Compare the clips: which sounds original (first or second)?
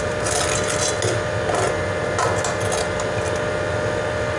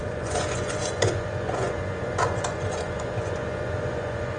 first